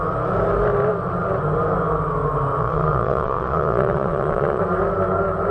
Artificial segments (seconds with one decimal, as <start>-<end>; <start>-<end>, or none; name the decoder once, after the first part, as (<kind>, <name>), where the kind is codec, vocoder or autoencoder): 2.6-4.6 (vocoder, Vocos)